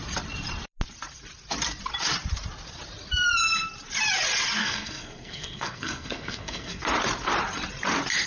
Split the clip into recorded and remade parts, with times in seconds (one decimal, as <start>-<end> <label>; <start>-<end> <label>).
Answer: 0.0-4.6 recorded; 4.6-6.8 remade; 6.8-8.3 recorded

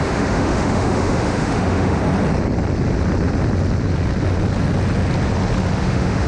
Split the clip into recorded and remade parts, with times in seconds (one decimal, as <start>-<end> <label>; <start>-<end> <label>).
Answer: 0.0-2.0 remade; 2.0-5.8 recorded; 5.8-6.3 remade

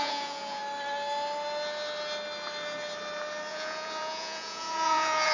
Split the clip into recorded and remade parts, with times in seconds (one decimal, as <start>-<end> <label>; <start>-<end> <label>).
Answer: 0.0-0.6 remade; 0.6-3.5 recorded; 3.5-5.3 remade

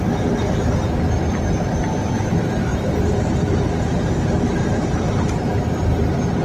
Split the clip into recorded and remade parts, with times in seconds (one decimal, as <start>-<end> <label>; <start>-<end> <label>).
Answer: 0.0-2.7 recorded; 2.7-5.6 remade; 5.6-6.4 recorded

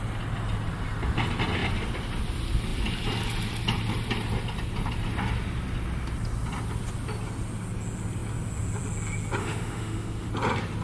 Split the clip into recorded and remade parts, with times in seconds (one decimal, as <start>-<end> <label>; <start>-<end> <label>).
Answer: 0.0-9.4 recorded; 9.4-10.3 remade; 10.3-10.8 recorded